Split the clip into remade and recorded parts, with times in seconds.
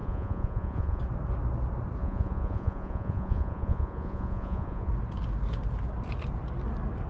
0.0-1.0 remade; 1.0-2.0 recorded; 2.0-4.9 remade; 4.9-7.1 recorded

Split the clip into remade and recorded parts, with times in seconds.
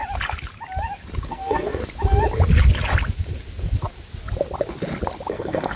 0.0-1.3 recorded; 1.3-1.8 remade; 1.8-5.3 recorded; 5.3-5.8 remade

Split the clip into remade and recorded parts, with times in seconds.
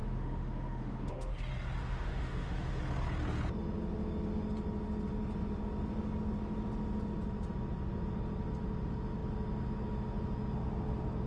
0.0-1.3 remade; 1.3-1.8 recorded; 1.8-2.8 remade; 2.8-11.3 recorded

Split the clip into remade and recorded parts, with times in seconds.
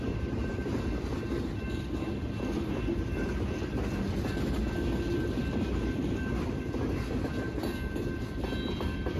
0.0-9.2 recorded